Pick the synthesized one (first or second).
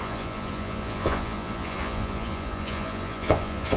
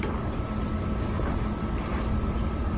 first